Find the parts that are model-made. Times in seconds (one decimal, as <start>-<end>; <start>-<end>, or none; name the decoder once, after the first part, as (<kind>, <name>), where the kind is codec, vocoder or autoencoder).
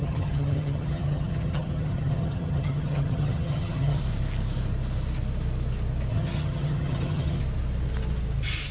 0.0-4.0 (vocoder, HiFi-GAN); 6.1-7.4